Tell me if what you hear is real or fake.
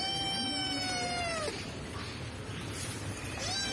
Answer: fake